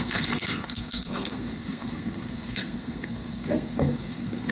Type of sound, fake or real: fake